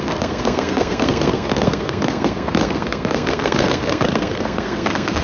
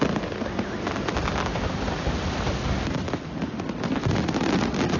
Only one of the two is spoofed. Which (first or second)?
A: first